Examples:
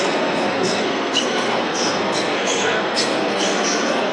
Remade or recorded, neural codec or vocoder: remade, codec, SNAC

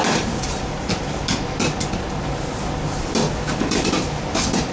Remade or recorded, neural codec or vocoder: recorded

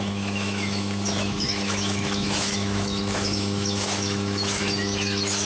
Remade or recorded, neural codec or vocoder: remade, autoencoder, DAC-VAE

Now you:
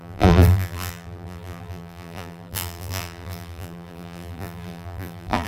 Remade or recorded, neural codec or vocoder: remade, vocoder, BigVGAN v2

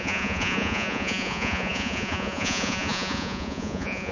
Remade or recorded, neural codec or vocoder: remade, vocoder, Vocos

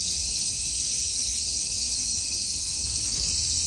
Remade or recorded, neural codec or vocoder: remade, codec, SNAC